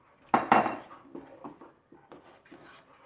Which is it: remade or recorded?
recorded